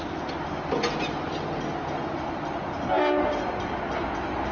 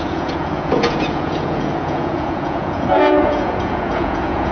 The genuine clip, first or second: first